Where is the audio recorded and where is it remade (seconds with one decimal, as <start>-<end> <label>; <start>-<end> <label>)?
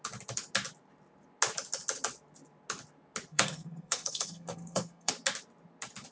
0.0-3.3 recorded; 3.3-5.1 remade; 5.1-6.1 recorded